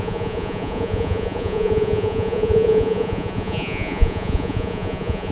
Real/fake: fake